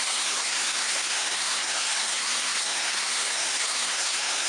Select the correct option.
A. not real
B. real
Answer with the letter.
A